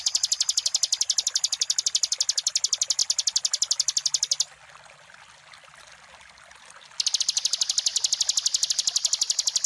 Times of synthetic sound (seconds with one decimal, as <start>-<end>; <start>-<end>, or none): none